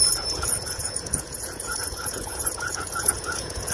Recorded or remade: remade